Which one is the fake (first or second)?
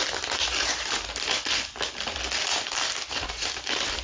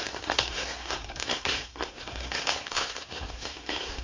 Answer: second